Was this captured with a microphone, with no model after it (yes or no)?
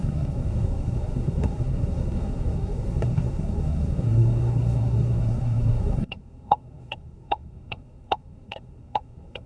no